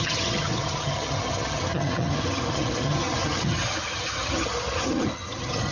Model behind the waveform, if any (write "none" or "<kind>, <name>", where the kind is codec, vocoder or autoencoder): vocoder, HiFi-GAN